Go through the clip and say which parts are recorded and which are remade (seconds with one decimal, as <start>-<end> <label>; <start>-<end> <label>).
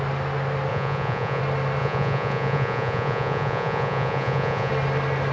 0.0-0.7 recorded; 0.7-1.4 remade; 1.4-1.8 recorded; 1.8-4.7 remade; 4.7-5.3 recorded